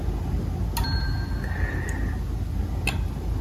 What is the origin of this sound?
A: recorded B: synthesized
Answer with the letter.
A